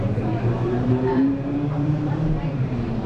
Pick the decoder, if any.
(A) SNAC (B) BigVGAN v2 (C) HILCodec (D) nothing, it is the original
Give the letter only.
B